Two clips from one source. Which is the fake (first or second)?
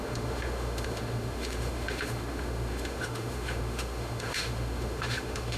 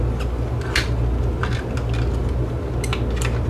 first